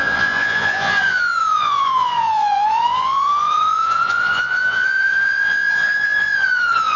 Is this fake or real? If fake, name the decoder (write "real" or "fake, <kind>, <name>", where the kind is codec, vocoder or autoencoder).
fake, vocoder, Vocos